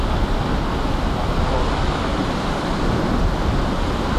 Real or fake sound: real